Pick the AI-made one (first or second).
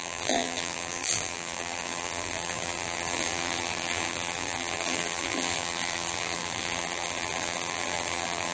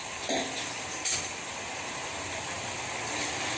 first